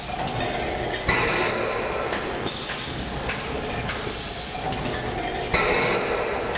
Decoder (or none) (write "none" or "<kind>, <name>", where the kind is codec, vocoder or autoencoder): none